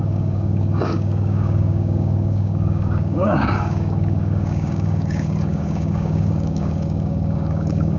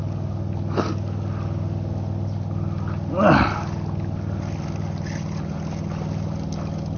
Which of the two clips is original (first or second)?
second